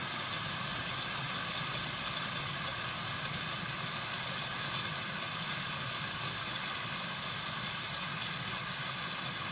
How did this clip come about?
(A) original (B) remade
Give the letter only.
A